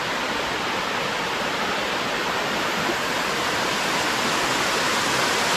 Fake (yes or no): no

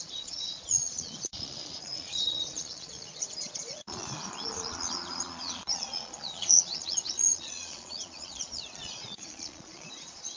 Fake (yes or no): yes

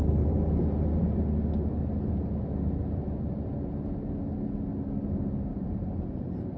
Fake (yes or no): no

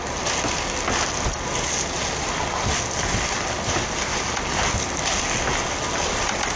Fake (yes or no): no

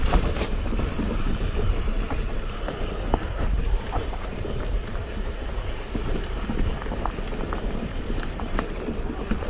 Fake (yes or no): yes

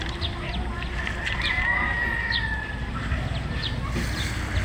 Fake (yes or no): no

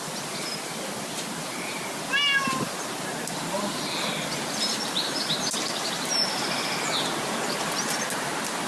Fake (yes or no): no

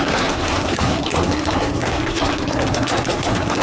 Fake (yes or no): yes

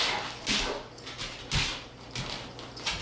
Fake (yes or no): no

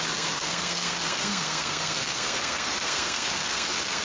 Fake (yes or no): yes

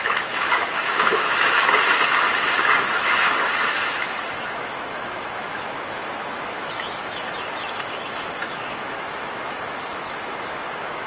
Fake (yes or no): yes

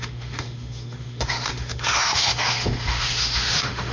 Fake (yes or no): yes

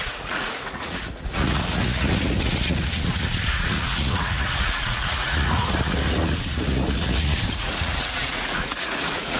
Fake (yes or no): yes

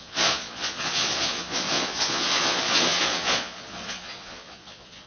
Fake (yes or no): yes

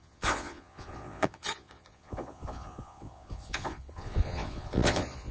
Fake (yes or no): yes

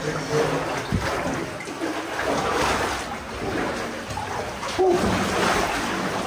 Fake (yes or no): no